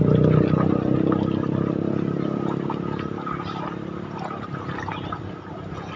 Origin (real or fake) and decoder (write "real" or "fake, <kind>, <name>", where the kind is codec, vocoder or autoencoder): real